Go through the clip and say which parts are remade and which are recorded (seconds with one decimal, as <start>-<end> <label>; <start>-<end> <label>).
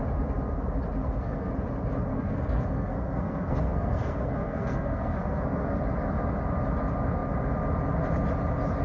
0.0-1.0 recorded; 1.0-1.5 remade; 1.5-2.1 recorded; 2.1-5.8 remade; 5.8-8.8 recorded